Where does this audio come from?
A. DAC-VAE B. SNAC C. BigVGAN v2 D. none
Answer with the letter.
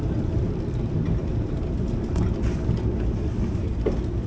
D